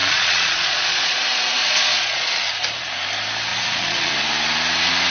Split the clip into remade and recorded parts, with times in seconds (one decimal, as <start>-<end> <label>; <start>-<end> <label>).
0.0-1.2 remade; 1.2-1.6 recorded; 1.6-2.3 remade; 2.3-3.5 recorded; 3.5-4.1 remade; 4.1-5.1 recorded

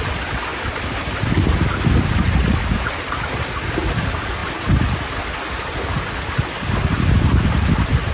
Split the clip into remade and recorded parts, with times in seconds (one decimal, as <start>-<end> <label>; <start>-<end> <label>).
0.0-8.1 recorded

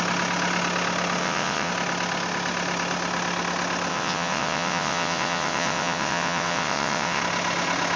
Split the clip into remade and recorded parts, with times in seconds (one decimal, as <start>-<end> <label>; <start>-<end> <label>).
0.0-1.2 recorded; 1.2-1.7 remade; 1.7-3.9 recorded; 3.9-7.2 remade; 7.2-8.0 recorded

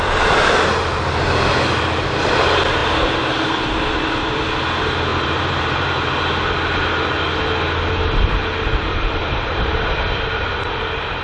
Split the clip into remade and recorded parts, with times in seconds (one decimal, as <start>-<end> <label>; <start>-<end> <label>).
0.0-2.8 recorded; 2.8-4.4 remade; 4.4-5.1 recorded; 5.1-5.9 remade; 5.9-8.9 recorded; 8.9-9.7 remade; 9.7-11.2 recorded